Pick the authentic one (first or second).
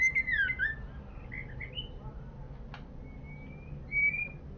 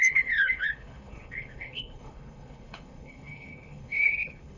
first